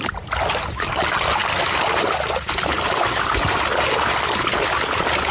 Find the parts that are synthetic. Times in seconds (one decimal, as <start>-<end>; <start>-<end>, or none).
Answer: 1.4-3.6